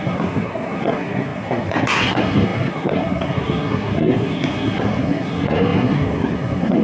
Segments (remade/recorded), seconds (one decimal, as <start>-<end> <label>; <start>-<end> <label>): 0.0-6.8 remade